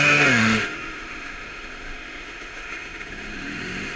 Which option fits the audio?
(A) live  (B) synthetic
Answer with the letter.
B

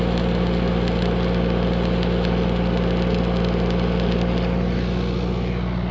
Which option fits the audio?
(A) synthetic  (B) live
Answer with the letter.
B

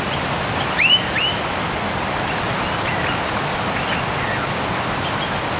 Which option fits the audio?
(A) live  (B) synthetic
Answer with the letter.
A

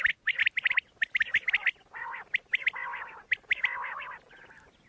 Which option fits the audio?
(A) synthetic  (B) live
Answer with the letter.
B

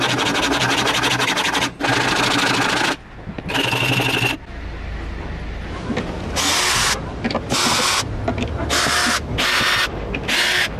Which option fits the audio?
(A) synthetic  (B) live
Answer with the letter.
B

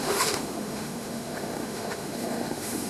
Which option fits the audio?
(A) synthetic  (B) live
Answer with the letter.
A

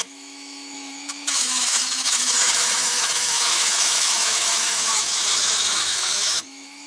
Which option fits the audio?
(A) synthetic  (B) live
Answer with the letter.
A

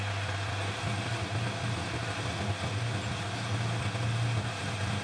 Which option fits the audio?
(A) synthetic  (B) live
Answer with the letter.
B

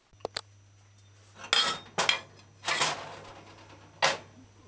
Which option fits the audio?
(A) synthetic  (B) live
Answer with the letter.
B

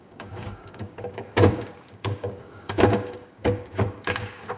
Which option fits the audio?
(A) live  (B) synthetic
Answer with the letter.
B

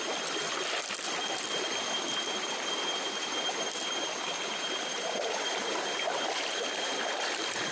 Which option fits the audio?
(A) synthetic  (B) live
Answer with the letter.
A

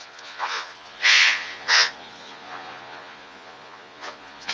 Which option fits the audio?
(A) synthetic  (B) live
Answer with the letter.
A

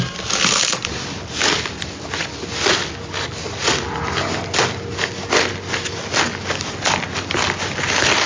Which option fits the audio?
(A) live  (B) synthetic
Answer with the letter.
A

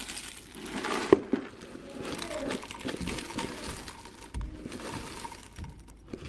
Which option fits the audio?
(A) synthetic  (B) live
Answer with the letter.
B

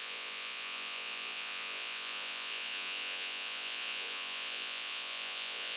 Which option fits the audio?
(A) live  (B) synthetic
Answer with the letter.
B